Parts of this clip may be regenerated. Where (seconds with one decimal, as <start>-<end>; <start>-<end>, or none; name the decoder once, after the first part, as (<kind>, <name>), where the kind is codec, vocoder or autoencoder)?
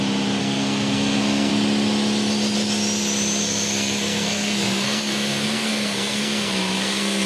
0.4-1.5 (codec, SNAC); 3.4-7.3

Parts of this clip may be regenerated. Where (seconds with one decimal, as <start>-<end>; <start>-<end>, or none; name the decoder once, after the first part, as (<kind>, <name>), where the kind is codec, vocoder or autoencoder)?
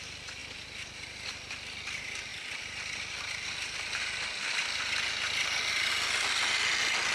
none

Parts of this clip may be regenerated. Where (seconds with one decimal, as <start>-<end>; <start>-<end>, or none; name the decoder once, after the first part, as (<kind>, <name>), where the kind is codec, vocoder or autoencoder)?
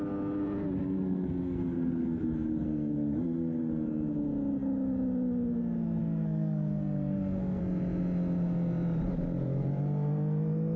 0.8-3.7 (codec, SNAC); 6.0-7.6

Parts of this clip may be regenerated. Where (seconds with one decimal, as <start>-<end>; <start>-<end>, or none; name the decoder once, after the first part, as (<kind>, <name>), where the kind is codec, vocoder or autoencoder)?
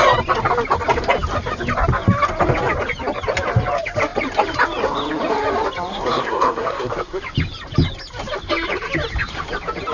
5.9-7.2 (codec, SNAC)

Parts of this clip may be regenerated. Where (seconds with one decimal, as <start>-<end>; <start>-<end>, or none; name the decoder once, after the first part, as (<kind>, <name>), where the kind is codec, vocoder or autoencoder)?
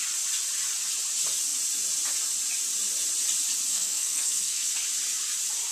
3.7-4.7 (codec, SNAC)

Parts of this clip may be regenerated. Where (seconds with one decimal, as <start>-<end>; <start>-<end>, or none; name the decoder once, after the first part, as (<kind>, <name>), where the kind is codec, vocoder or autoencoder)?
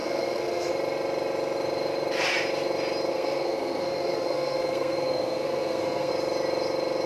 0.0-0.7 (codec, SNAC); 3.1-6.1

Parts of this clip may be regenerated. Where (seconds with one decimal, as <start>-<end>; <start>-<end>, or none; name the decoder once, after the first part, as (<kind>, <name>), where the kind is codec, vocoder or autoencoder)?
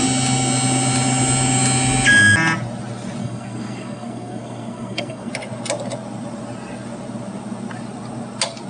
3.2-5.3 (codec, SNAC)